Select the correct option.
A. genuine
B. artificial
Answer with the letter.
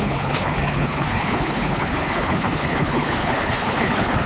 B